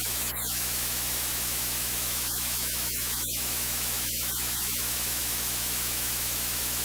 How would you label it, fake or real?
fake